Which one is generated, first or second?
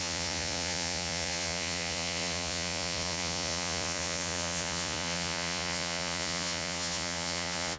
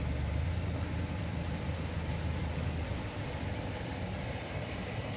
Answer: first